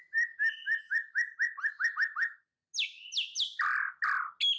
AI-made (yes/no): no